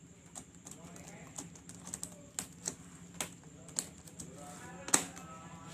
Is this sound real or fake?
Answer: real